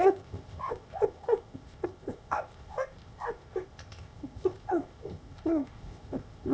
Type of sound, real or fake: fake